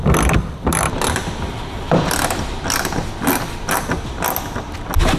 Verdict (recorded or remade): recorded